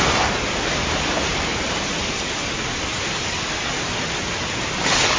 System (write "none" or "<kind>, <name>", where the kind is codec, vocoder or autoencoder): none